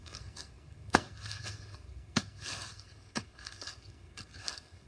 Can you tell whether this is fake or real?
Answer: fake